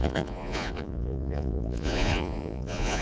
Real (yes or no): no